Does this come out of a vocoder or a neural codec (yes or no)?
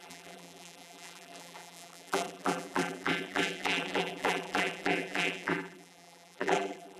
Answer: yes